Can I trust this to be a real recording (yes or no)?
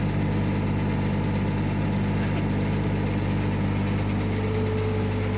yes